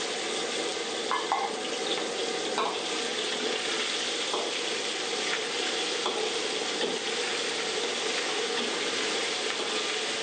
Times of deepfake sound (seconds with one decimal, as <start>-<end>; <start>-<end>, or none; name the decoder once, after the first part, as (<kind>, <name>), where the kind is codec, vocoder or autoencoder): 3.1-3.8 (vocoder, Vocos)